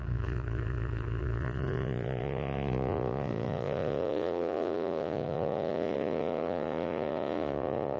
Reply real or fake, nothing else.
fake